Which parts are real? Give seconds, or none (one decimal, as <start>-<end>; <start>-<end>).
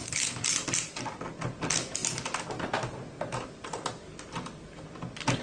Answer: 1.0-5.4